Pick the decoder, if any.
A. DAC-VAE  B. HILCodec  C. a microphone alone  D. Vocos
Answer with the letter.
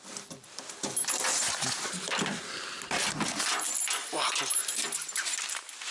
C